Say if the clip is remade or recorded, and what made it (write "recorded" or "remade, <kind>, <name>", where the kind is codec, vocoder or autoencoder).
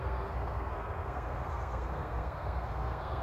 remade, codec, SNAC